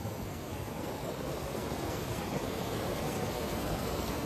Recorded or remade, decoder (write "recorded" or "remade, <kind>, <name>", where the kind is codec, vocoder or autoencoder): remade, codec, SNAC